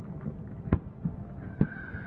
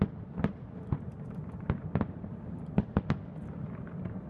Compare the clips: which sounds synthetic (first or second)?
second